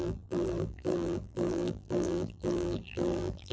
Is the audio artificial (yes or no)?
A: yes